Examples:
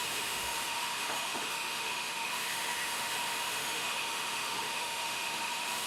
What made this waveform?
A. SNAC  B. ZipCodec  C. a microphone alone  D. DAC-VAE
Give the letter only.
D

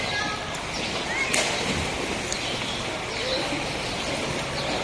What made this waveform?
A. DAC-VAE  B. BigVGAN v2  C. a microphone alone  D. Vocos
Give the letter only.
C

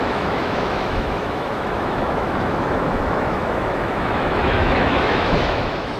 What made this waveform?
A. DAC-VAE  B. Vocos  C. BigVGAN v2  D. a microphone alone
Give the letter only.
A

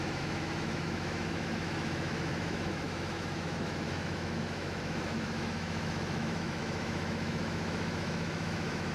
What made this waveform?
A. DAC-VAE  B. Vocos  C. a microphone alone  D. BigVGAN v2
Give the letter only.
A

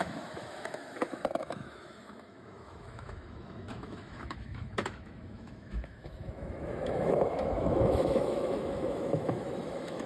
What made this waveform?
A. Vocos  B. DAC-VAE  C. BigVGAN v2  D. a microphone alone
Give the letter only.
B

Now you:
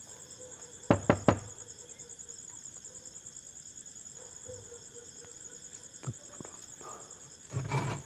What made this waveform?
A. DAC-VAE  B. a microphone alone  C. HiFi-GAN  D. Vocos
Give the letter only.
B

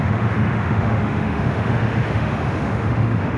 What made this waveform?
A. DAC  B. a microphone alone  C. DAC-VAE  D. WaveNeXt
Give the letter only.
C